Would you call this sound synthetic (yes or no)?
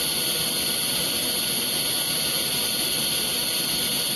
no